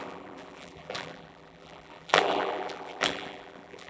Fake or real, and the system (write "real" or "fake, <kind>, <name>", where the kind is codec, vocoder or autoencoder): fake, vocoder, BigVGAN v2